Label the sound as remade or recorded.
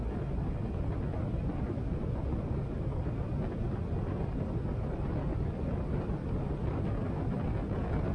recorded